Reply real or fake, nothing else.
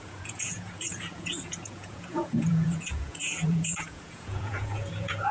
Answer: fake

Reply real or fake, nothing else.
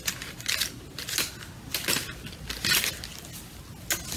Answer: real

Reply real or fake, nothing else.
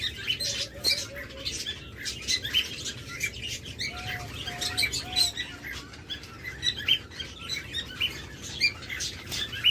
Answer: real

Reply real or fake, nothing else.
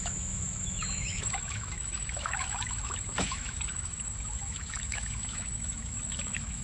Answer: fake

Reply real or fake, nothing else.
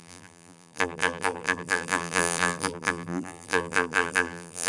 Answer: fake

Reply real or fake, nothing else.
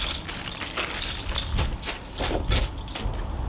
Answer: real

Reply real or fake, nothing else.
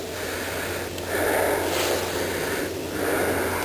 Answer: real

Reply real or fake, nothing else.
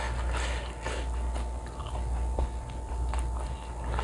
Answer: real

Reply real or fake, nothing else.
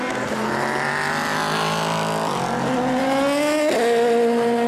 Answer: real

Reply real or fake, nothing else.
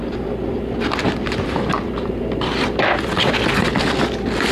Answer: real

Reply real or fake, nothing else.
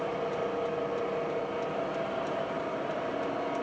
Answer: real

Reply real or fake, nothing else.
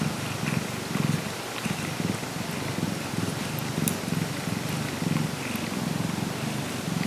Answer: real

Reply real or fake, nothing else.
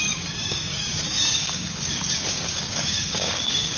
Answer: fake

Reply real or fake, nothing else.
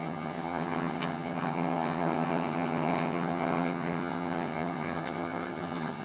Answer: fake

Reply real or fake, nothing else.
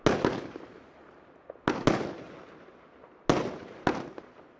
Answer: real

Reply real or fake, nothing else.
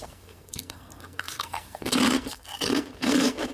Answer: fake